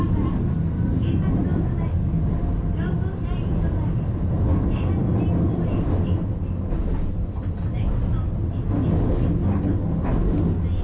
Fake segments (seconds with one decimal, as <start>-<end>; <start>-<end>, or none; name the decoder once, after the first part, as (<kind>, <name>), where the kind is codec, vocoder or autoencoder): none